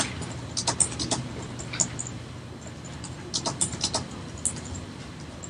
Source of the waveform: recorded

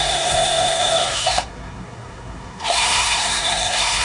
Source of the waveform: remade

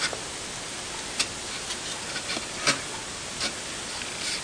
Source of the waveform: recorded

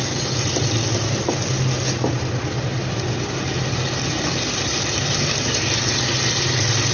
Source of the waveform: recorded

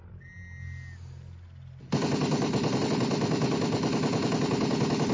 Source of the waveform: recorded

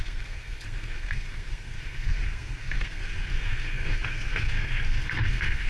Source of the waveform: remade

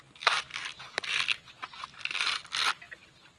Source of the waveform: recorded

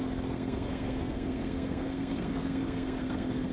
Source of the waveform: remade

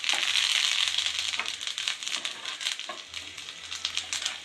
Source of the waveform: recorded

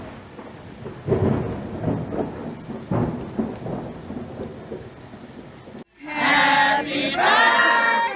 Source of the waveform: recorded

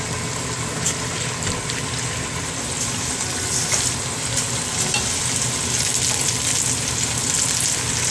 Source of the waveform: recorded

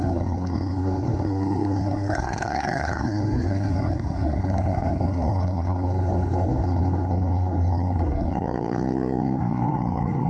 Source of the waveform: remade